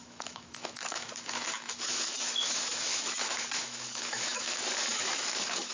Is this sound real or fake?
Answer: fake